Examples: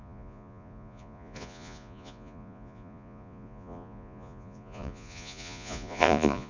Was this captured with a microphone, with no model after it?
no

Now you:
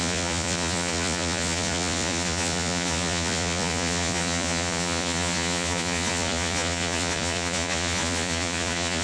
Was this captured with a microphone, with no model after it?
no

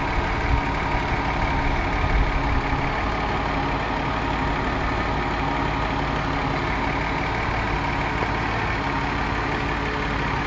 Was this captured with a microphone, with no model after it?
yes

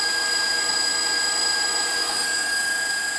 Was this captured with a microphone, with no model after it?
yes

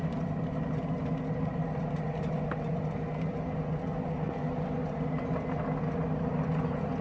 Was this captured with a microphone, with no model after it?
yes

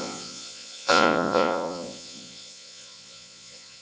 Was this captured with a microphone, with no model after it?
no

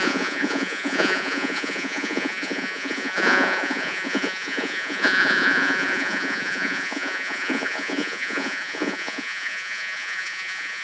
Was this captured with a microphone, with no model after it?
no